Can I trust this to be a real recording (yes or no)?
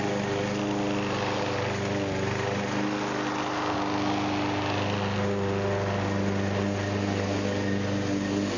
yes